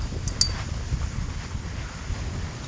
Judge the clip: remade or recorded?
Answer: recorded